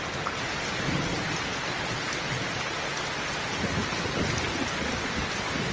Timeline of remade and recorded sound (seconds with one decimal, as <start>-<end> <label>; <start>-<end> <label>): 0.0-5.7 recorded